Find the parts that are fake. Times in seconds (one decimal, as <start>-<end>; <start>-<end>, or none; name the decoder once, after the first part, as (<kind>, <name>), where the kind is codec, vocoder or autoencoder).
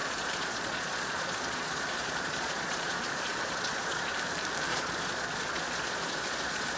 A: 0.0-4.1 (vocoder, Vocos); 4.7-6.8